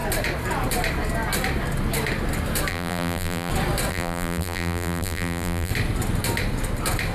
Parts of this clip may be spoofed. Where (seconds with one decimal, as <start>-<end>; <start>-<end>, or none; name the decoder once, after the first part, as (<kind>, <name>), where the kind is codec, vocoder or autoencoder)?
2.7-3.5 (vocoder, BigVGAN v2); 3.9-5.7